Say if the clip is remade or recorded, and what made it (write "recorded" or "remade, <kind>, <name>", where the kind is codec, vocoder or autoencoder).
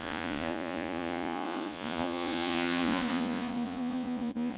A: remade, vocoder, Vocos